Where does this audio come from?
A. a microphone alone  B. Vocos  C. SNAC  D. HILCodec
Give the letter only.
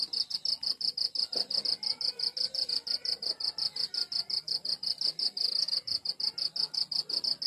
A